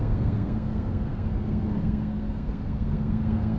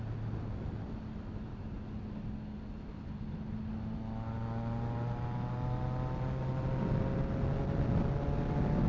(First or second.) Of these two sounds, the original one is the second